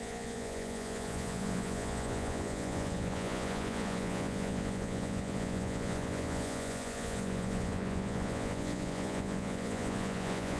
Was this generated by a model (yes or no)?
yes